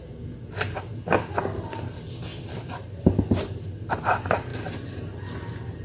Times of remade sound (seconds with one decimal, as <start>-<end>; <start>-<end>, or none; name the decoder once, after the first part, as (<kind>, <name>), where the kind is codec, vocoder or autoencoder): 2.3-3.9 (vocoder, BigVGAN v2)